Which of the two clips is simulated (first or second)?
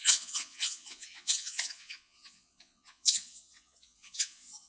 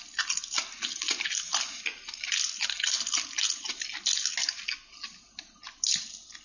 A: first